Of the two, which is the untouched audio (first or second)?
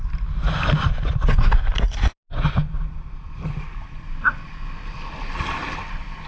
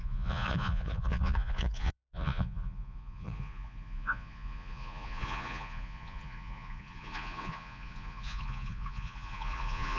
first